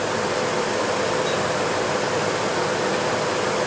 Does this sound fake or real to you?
real